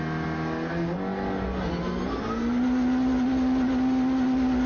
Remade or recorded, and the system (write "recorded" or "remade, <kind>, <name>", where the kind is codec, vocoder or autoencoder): recorded